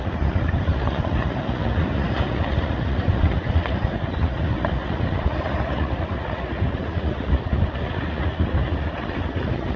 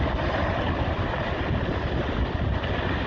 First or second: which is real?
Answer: second